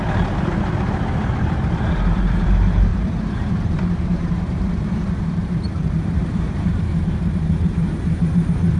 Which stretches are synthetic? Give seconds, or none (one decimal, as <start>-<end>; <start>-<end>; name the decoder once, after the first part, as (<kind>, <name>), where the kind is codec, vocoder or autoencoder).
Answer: 0.0-8.8 (vocoder, BigVGAN v2)